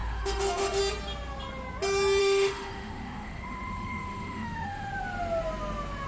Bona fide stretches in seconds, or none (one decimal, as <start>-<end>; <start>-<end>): 0.8-2.2; 4.9-6.1

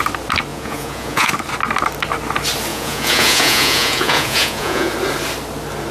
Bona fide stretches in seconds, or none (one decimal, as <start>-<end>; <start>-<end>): 0.0-0.5; 1.3-2.7; 4.9-5.9